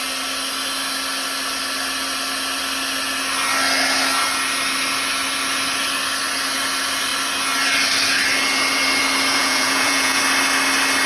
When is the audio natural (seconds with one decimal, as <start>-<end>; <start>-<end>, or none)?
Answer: 0.0-9.4; 10.2-11.1